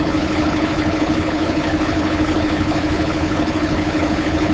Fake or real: fake